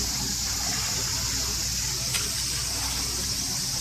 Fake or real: real